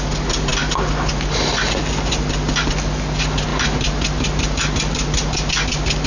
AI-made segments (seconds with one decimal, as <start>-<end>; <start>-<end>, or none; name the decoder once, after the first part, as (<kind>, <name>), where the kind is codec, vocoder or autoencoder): none